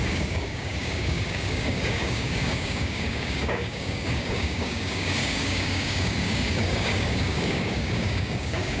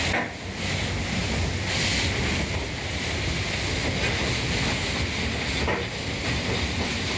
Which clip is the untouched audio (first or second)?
second